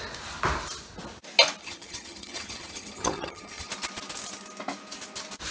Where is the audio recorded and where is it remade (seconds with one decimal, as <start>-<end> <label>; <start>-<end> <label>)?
0.0-1.6 recorded; 1.6-3.7 remade; 3.7-5.5 recorded